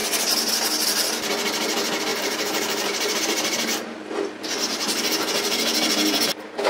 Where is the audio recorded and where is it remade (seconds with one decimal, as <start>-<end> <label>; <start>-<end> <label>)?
0.0-2.1 recorded; 2.1-3.2 remade; 3.2-6.7 recorded